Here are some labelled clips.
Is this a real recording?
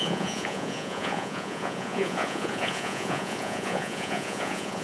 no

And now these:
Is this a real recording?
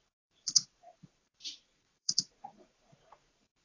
no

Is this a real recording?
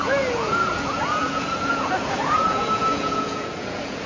no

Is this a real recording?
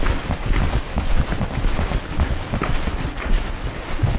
yes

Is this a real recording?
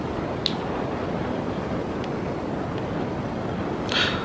yes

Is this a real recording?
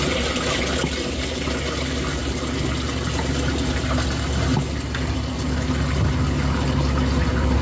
yes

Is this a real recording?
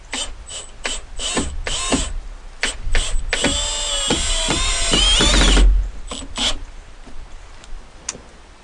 yes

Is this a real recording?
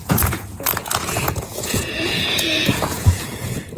no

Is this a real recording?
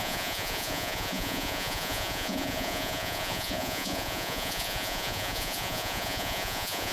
no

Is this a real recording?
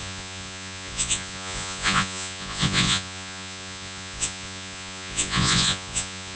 no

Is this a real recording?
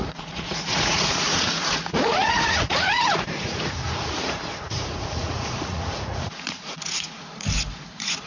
no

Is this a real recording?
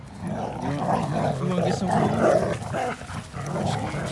yes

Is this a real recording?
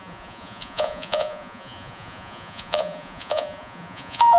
no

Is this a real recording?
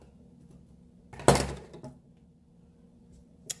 yes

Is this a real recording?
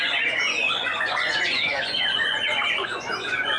no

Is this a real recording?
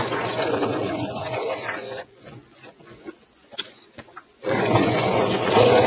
no